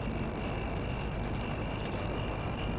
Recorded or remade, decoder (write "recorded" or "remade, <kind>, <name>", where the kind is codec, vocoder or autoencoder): recorded